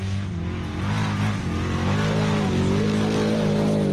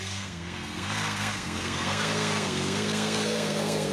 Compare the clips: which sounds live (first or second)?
first